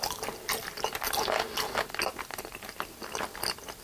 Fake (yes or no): no